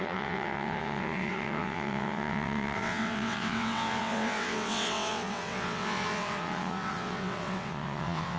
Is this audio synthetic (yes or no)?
yes